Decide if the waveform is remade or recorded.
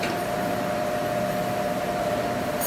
remade